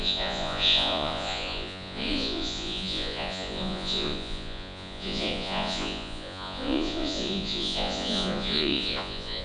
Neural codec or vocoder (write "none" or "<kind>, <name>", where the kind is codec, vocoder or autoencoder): vocoder, Vocos